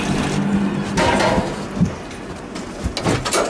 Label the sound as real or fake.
real